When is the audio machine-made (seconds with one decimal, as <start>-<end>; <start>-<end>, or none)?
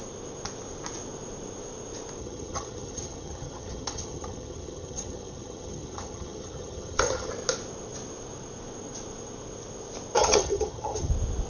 2.2-7.3; 10.2-11.1